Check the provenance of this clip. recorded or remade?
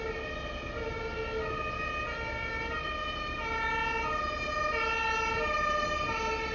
recorded